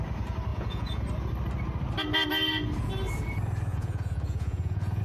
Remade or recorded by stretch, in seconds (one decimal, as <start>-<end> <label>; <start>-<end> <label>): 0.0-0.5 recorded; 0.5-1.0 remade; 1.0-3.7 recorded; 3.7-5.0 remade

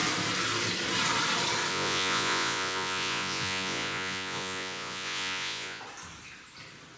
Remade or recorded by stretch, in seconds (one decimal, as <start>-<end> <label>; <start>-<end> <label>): 0.0-1.7 recorded; 1.7-5.8 remade; 5.8-7.0 recorded

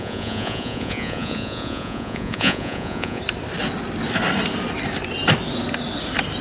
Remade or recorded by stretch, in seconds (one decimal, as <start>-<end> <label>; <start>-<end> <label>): 0.0-3.2 remade; 3.2-6.4 recorded

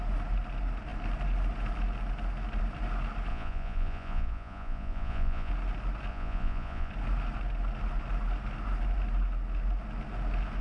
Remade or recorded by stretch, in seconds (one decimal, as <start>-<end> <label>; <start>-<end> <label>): 0.0-3.3 recorded; 3.3-5.5 remade; 5.5-6.1 recorded; 6.1-6.9 remade; 6.9-10.6 recorded

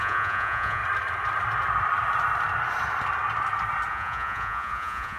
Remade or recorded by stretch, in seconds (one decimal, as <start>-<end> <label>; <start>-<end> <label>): 0.0-0.8 remade; 0.8-3.9 recorded; 3.9-5.2 remade

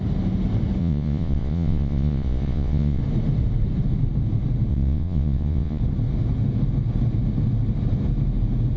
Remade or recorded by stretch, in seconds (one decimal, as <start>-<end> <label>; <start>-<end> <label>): 0.0-0.8 recorded; 0.8-3.0 remade; 3.0-4.7 recorded; 4.7-5.8 remade; 5.8-8.8 recorded